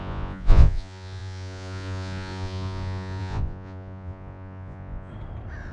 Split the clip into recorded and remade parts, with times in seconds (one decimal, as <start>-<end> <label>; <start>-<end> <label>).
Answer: 0.0-5.1 remade; 5.1-5.7 recorded